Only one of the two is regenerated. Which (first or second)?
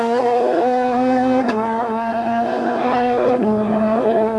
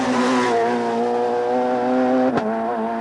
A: first